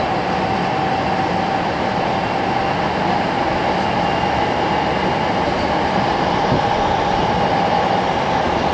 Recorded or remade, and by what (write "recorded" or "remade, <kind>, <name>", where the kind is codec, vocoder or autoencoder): recorded